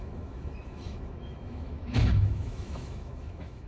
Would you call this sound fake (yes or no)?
yes